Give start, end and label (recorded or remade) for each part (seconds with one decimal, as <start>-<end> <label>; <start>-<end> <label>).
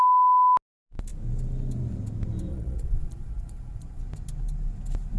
0.0-2.5 recorded; 2.5-4.0 remade; 4.0-5.2 recorded